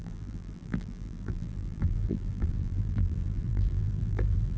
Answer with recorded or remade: remade